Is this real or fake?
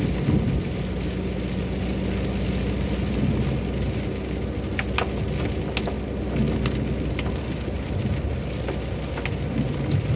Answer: real